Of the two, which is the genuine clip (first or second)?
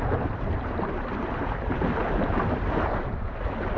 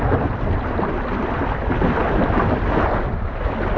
second